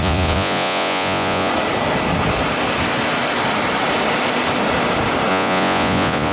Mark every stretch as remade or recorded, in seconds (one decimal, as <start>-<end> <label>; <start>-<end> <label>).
0.0-1.5 remade; 1.5-5.3 recorded; 5.3-6.3 remade